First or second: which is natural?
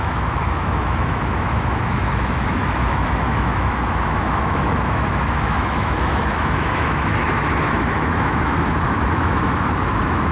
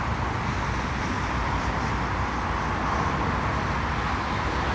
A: second